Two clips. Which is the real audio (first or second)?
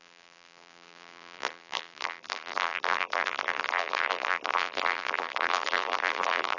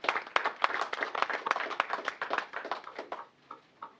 second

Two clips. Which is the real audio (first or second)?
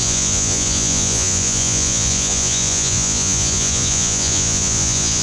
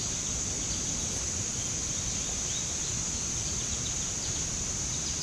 second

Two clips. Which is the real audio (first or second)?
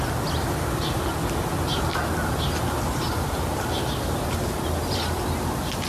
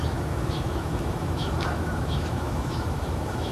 first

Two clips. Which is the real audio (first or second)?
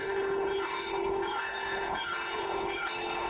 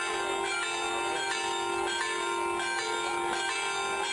second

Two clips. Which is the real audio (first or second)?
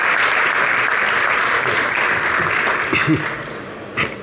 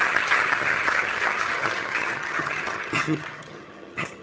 first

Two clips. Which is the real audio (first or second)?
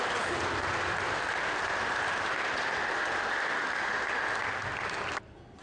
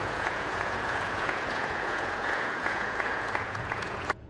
first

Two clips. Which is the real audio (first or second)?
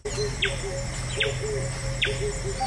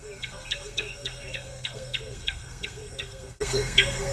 first